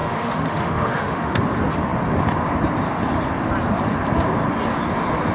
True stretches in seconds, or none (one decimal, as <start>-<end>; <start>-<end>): 1.4-5.3